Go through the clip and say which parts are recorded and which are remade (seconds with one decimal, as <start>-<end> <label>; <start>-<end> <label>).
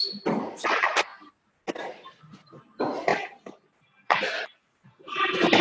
0.0-5.6 recorded